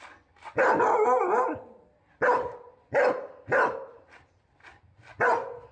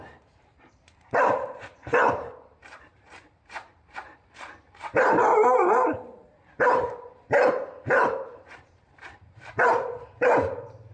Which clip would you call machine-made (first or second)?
second